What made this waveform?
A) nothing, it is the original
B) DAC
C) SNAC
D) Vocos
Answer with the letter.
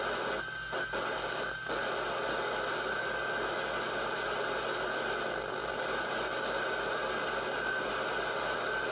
A